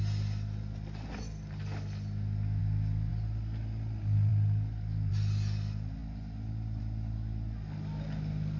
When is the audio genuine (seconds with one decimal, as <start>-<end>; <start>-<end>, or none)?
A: 0.0-8.6